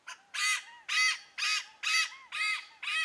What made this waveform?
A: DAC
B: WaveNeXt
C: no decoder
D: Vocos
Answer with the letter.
C